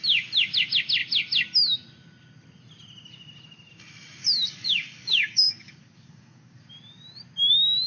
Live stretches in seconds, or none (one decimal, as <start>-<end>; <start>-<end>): 0.0-4.2; 6.7-7.9